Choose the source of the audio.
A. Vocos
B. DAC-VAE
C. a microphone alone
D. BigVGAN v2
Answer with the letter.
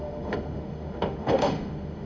B